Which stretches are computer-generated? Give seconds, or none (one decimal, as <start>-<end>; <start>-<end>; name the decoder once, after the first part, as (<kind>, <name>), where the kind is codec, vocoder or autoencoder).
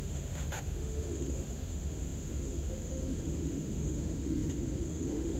0.0-5.4 (autoencoder, DAC-VAE)